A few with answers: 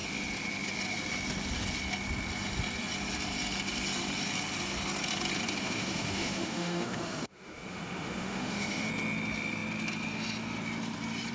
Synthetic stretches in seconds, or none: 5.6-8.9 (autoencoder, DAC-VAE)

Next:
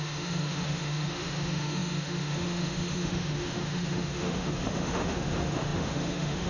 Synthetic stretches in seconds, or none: 0.0-6.5 (autoencoder, DAC-VAE)

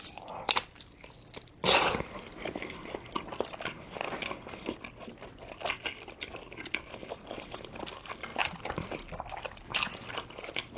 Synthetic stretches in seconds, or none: none

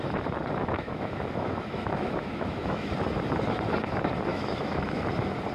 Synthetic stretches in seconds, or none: 0.6-2.9 (autoencoder, DAC-VAE); 4.3-5.0

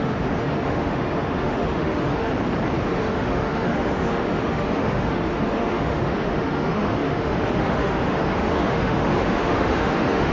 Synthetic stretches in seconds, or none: 0.0-2.3 (autoencoder, DAC-VAE); 2.8-10.3

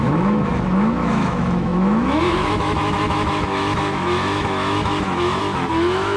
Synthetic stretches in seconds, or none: 0.0-6.2 (autoencoder, DAC-VAE)